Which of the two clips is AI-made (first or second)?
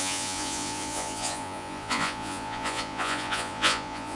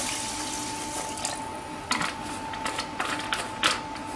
first